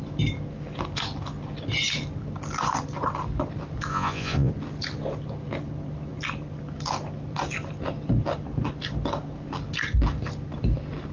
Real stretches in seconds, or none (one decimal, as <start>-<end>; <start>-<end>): 0.0-3.9; 4.5-11.1